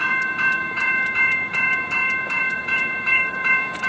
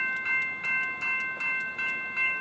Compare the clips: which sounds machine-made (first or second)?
first